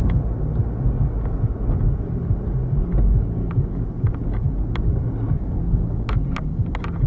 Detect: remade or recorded recorded